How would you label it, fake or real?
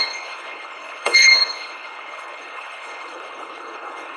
fake